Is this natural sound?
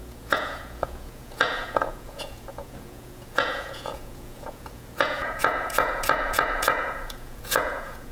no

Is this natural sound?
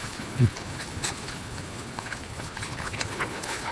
no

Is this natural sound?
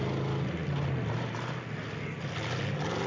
yes